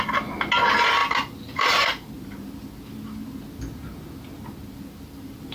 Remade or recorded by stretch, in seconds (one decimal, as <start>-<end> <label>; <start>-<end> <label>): 0.0-5.5 recorded